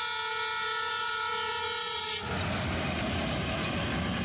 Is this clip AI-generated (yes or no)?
no